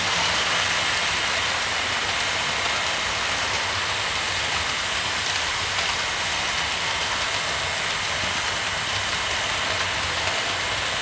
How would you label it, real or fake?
real